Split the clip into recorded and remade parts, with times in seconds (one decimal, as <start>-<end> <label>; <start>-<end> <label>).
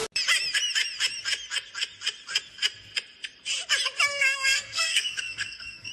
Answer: 0.0-4.1 recorded; 4.1-5.9 remade